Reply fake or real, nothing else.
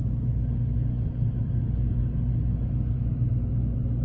real